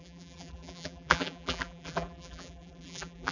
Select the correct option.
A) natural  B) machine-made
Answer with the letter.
B